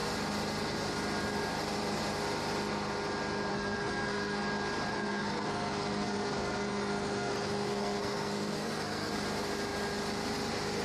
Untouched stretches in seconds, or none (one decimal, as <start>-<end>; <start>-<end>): 0.0-3.5; 4.5-4.9; 9.1-10.8